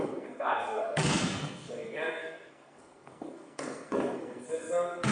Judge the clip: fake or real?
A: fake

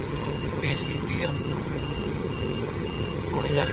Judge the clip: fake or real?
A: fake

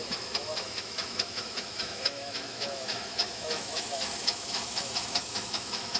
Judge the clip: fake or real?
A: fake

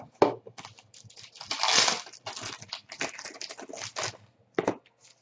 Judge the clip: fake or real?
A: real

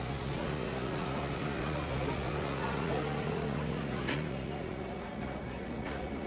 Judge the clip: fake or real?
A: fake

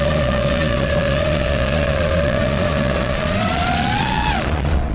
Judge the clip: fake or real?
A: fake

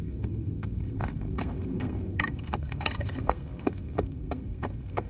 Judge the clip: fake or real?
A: fake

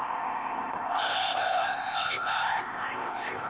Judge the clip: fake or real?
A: fake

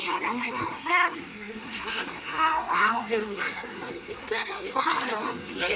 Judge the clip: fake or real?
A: fake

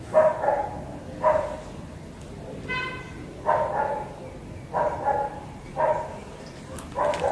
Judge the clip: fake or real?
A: real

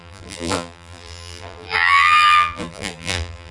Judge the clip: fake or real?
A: fake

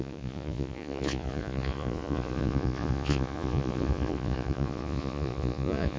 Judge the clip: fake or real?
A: fake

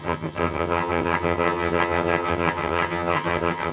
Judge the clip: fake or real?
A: fake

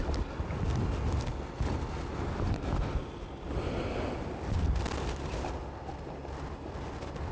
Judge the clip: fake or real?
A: real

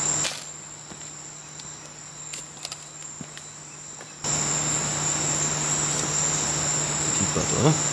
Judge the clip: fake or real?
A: real